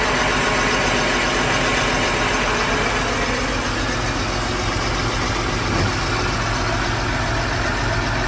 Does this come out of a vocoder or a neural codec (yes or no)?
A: no